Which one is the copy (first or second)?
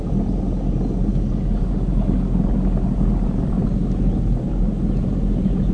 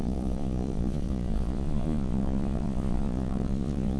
second